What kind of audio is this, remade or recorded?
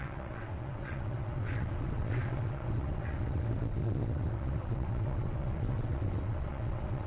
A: remade